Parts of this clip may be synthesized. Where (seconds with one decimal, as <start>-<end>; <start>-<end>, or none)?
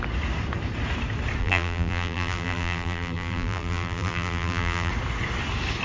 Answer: 1.4-4.9